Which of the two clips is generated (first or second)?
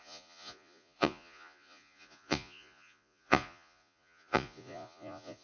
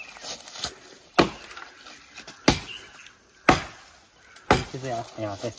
first